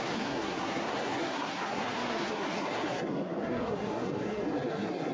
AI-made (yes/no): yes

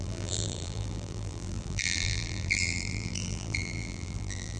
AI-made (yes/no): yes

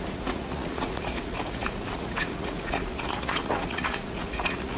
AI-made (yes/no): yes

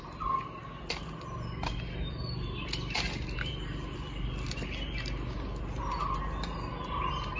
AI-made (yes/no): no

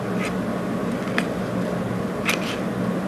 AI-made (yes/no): no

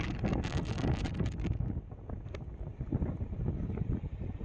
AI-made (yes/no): yes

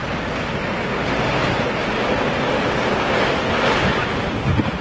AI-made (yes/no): no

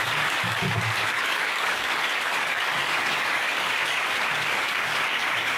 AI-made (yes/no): yes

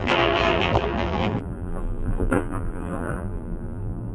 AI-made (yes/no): yes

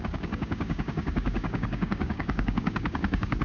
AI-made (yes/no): yes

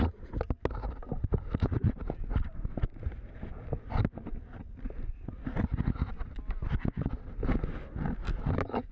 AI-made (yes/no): no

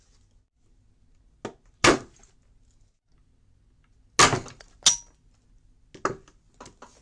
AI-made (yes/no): no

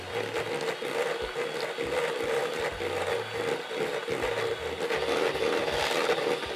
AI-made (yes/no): no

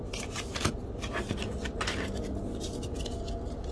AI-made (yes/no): no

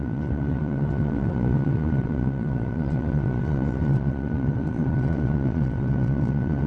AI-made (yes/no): yes